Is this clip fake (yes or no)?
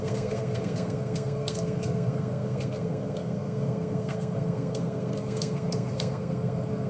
yes